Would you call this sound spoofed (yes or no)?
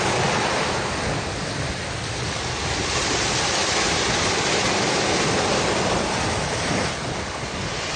no